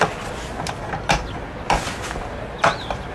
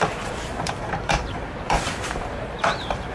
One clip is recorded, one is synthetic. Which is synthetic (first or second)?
second